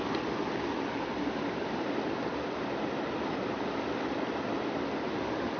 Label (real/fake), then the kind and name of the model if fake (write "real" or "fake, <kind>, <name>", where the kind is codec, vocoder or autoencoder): real